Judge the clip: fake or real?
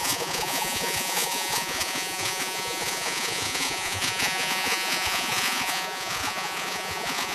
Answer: fake